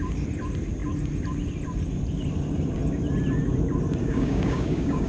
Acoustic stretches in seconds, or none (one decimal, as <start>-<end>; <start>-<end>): 0.0-4.0